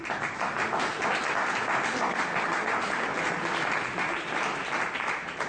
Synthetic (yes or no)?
no